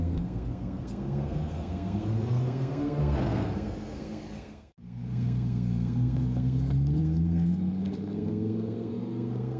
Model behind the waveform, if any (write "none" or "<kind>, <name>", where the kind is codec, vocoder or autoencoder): codec, SNAC